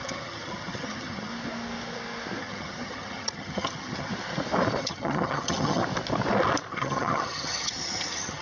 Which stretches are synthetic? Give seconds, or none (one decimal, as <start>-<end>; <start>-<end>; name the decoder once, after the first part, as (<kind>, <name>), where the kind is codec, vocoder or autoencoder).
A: 0.0-1.3 (vocoder, HiFi-GAN); 2.4-4.1; 4.8-5.8; 6.7-8.4